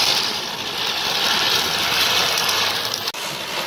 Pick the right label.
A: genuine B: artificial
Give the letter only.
A